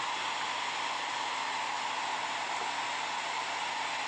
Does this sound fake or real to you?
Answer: real